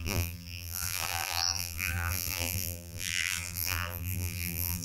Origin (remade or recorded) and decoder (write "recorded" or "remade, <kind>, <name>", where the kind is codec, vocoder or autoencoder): remade, vocoder, BigVGAN v2